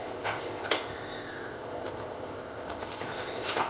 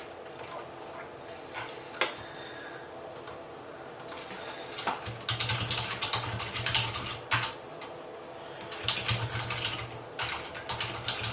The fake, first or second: first